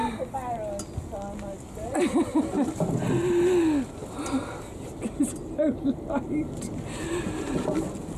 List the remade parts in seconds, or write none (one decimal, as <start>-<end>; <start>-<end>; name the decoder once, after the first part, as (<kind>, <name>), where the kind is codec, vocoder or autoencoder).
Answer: none